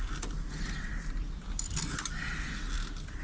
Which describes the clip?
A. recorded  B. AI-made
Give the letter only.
A